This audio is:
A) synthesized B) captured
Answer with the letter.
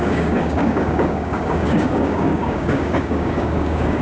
A